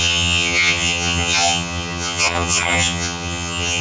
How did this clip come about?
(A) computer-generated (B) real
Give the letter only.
A